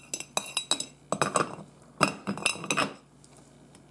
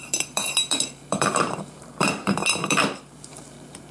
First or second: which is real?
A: first